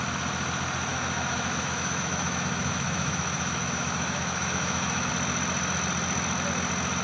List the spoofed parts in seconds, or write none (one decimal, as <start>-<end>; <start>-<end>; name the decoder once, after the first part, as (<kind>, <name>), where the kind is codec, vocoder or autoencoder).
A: 0.9-5.1 (autoencoder, DAC-VAE)